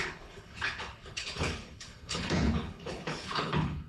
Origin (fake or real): fake